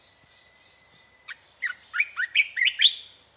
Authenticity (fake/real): real